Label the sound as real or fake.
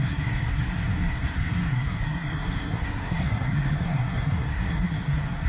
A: fake